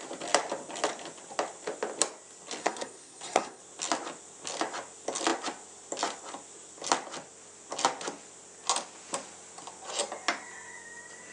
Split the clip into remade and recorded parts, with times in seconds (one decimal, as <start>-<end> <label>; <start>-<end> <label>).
0.0-2.6 recorded; 2.6-3.6 remade; 3.6-11.3 recorded